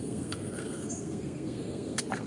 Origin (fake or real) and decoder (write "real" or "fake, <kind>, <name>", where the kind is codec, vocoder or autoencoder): fake, codec, SNAC